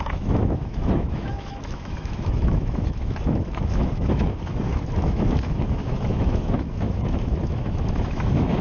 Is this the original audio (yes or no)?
no